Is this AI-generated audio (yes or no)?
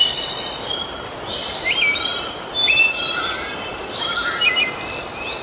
no